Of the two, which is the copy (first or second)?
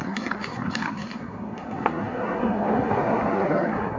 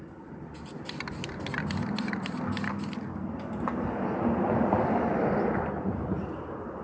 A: first